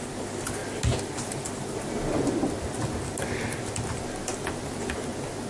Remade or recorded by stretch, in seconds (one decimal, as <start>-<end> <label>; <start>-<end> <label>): 0.0-5.5 recorded